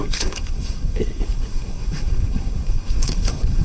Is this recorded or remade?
remade